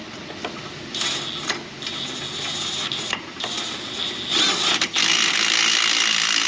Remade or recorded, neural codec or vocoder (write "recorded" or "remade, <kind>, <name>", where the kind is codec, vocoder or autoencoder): recorded